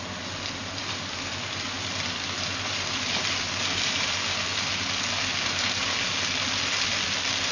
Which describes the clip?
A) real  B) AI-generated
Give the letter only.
A